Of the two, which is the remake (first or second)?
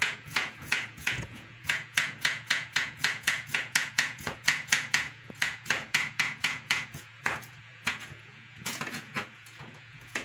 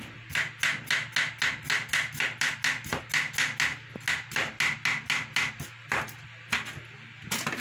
first